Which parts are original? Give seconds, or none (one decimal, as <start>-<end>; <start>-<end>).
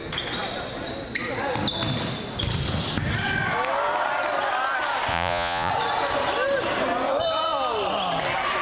0.0-5.1; 5.7-8.6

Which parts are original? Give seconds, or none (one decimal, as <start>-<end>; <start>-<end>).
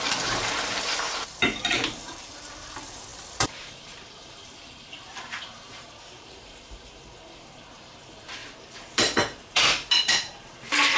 none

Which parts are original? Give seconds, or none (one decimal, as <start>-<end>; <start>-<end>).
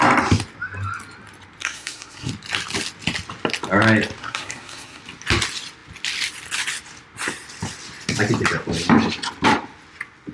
0.0-1.6; 2.3-4.2; 5.0-10.3